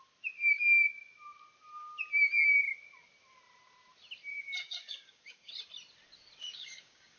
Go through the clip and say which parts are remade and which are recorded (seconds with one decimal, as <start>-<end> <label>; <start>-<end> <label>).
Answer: 0.0-4.3 recorded; 4.3-5.5 remade; 5.5-6.4 recorded; 6.4-7.2 remade